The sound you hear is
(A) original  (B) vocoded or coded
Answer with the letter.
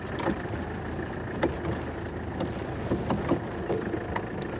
A